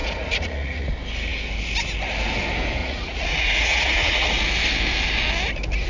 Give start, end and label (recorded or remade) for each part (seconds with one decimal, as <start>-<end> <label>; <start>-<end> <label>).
0.0-0.9 remade; 0.9-2.8 recorded; 2.8-4.3 remade; 4.3-5.9 recorded